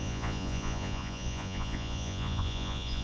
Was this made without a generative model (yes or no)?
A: no